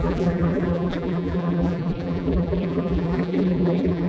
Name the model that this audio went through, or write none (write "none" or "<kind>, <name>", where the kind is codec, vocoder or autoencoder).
vocoder, BigVGAN v2